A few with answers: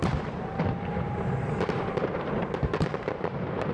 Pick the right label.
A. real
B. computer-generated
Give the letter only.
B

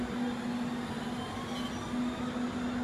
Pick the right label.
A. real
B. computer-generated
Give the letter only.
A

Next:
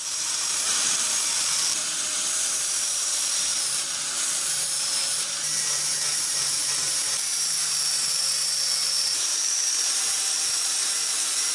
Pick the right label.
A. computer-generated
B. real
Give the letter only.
A